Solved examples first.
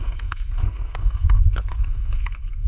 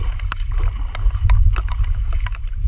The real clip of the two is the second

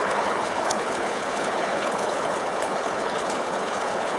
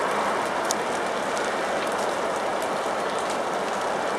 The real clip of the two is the second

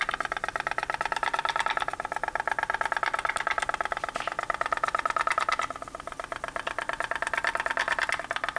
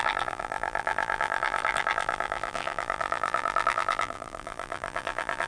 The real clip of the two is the first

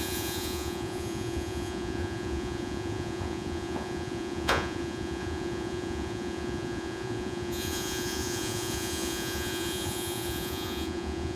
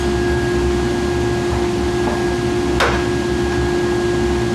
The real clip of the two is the second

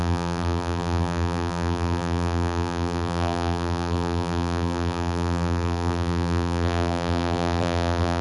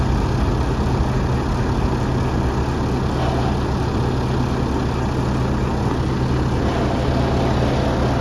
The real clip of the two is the second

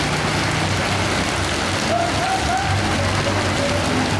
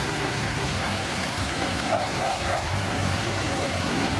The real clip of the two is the first